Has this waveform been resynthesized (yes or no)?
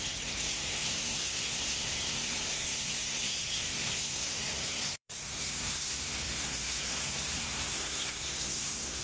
yes